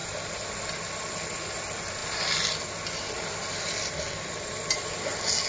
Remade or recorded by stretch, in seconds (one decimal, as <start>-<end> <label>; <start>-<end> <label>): 0.0-5.5 recorded